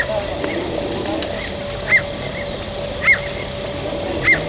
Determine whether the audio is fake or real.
real